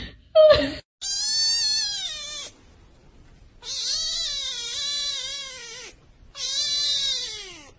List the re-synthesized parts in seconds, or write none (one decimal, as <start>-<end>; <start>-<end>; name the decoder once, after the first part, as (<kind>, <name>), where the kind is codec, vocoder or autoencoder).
none